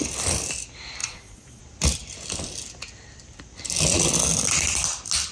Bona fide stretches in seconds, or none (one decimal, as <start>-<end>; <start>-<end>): 0.0-1.0; 1.6-5.3